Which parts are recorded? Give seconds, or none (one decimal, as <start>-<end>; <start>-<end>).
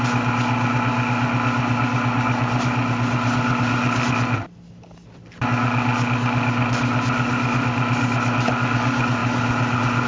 0.0-10.1